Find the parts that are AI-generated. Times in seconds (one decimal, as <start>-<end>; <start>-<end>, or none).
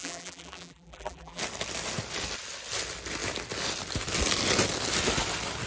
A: 0.0-1.4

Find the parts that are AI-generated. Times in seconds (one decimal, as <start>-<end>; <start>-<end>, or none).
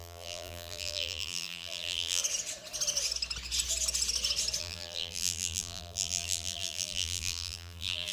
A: 0.0-2.2; 4.6-8.1